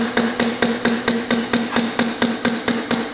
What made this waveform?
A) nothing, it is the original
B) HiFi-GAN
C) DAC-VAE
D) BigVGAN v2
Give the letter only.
A